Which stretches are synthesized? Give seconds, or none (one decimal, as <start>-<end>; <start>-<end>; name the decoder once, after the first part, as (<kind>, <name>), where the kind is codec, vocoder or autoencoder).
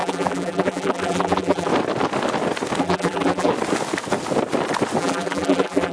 0.0-1.7 (vocoder, BigVGAN v2); 2.8-3.5; 5.0-5.9